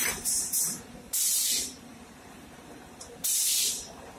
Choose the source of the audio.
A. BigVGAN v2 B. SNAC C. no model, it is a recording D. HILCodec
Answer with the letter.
A